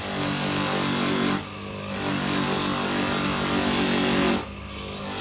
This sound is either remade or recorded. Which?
recorded